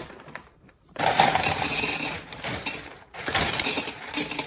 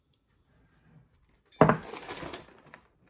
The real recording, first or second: second